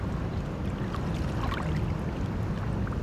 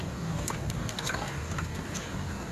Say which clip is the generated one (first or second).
second